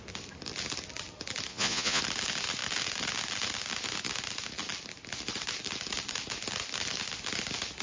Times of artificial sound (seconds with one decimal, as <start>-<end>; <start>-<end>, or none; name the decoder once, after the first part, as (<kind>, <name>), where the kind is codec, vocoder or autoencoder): 1.5-2.0 (vocoder, Vocos)